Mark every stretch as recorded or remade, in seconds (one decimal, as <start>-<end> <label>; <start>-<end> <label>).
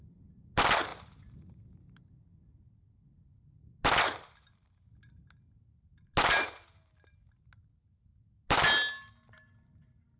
0.0-10.2 recorded